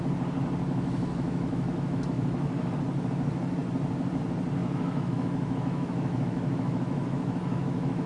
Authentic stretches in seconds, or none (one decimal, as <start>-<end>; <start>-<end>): 0.0-0.6; 2.7-4.6